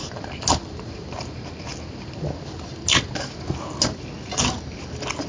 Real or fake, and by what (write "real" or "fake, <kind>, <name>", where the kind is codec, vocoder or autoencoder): real